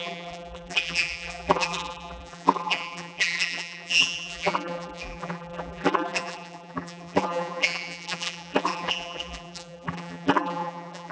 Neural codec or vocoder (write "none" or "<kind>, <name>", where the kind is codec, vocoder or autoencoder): vocoder, BigVGAN v2